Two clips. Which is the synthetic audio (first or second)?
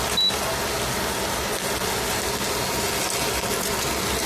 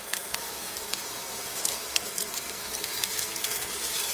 second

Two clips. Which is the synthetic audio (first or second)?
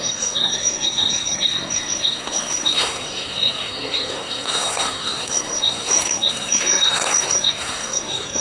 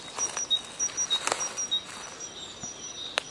first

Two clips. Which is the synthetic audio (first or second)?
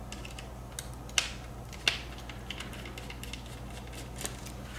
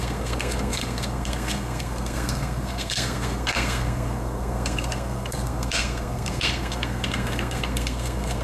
second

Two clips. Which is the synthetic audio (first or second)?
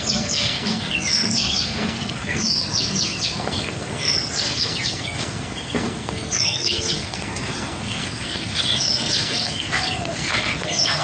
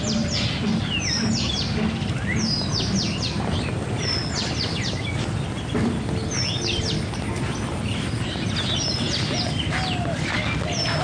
first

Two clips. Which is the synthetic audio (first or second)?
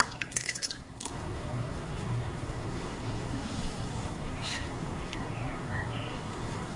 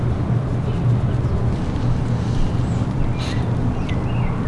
first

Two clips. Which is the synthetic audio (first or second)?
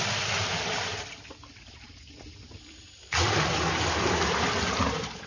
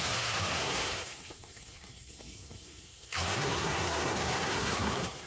second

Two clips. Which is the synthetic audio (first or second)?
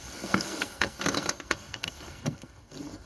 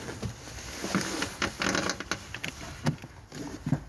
first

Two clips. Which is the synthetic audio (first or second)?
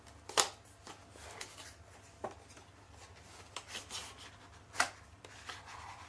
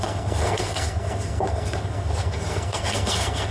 second